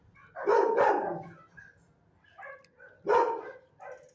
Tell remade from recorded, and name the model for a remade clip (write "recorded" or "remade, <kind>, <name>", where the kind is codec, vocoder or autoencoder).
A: recorded